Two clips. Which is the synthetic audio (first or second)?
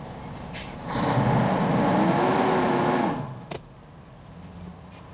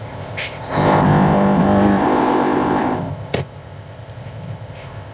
second